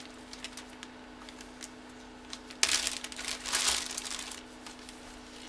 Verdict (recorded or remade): recorded